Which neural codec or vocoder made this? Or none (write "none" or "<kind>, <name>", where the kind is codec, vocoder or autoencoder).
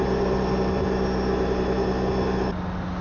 none